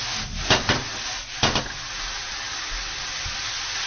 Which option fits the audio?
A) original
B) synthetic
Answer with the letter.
A